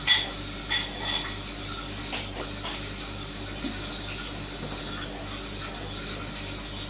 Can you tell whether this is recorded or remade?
recorded